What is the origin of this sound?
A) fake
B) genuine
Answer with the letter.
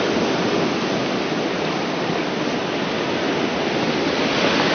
B